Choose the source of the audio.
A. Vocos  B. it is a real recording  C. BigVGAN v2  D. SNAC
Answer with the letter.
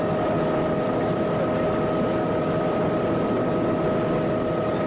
B